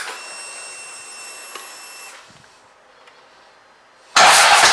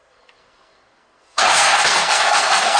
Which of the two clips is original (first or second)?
first